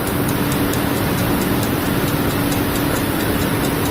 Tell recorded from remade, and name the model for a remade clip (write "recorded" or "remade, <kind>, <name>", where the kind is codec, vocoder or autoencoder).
recorded